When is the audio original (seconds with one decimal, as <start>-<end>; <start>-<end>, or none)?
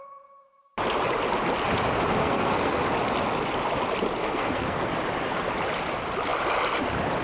0.0-2.2; 2.8-4.2; 4.9-7.2